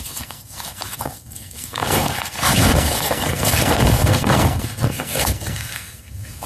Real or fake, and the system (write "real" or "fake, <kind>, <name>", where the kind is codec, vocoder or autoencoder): fake, codec, SNAC